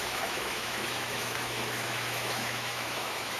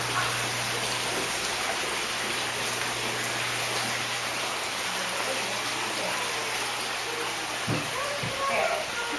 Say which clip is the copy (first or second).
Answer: first